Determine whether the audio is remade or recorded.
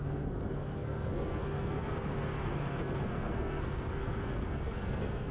remade